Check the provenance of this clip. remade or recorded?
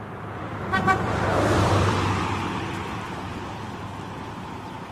remade